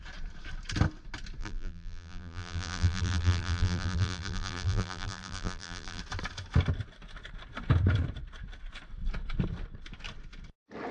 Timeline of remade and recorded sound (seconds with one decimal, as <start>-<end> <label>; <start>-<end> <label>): 0.0-1.4 recorded; 1.4-6.0 remade; 6.0-10.9 recorded